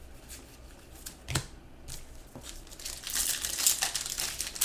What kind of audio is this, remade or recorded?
recorded